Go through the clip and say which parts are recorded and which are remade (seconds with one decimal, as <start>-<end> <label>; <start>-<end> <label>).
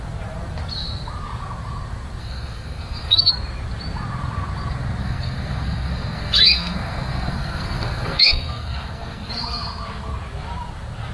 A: 0.0-2.2 recorded; 2.2-3.3 remade; 3.3-5.0 recorded; 5.0-9.3 remade; 9.3-11.1 recorded